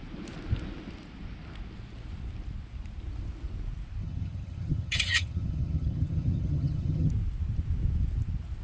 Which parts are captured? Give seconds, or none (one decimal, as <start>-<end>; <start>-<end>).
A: 0.0-4.0; 7.1-8.6